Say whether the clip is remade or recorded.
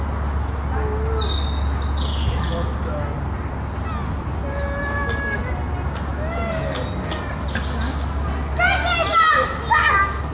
recorded